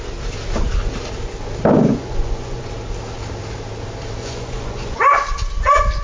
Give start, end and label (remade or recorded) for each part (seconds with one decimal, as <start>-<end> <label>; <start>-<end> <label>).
0.0-1.9 recorded; 1.9-2.7 remade; 2.7-4.2 recorded; 4.2-5.0 remade; 5.0-6.0 recorded